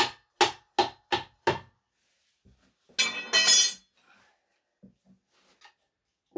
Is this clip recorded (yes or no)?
yes